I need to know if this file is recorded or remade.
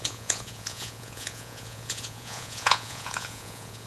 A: remade